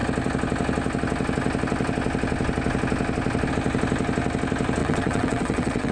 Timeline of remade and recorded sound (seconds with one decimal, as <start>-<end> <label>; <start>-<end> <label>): 0.0-4.8 recorded; 4.8-5.9 remade